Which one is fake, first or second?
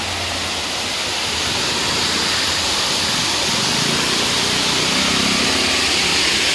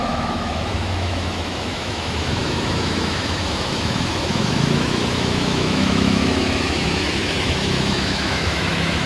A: second